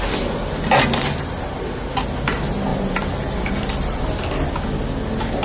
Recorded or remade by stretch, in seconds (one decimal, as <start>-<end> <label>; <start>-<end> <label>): 0.0-2.7 recorded; 2.7-4.0 remade; 4.0-5.4 recorded